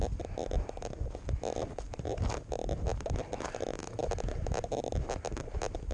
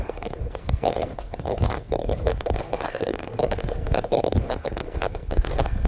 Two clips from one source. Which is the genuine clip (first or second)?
first